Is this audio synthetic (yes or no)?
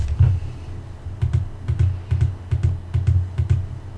no